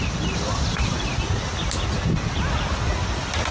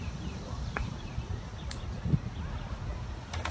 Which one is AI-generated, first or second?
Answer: second